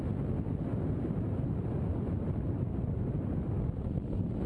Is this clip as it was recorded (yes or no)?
yes